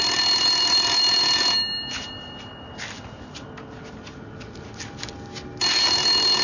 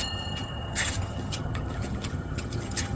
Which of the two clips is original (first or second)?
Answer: first